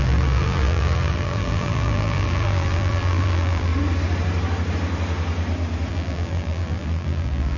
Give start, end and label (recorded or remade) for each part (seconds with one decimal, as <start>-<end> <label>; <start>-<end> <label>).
0.0-3.7 remade; 3.7-5.9 recorded; 5.9-7.6 remade